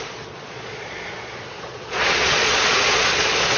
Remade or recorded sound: remade